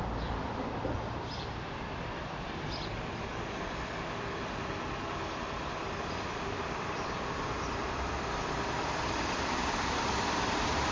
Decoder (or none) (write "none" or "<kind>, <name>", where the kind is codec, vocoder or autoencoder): vocoder, BigVGAN v2